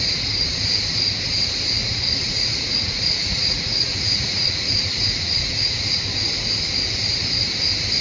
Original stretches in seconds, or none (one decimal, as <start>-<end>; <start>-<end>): 0.0-1.8; 6.0-8.0